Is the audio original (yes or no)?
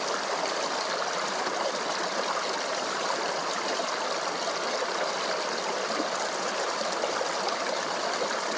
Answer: yes